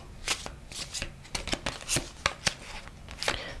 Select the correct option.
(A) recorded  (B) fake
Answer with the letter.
A